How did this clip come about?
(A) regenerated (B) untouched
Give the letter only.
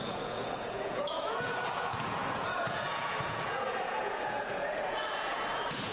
A